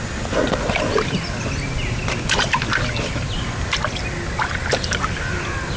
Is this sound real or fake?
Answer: real